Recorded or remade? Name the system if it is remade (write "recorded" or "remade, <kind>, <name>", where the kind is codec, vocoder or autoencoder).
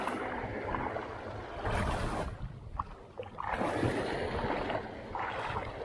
recorded